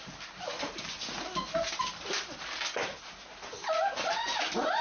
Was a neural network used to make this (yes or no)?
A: no